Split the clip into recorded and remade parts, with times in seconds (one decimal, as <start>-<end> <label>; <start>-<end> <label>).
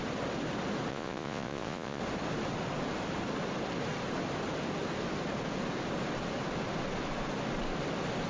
0.0-0.9 recorded; 0.9-2.0 remade; 2.0-8.3 recorded